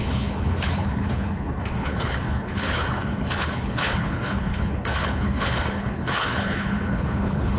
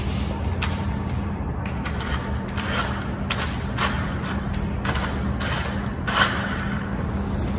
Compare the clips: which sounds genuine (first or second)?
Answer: second